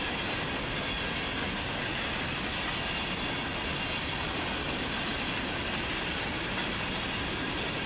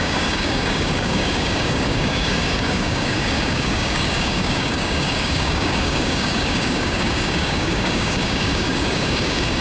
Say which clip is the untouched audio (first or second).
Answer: first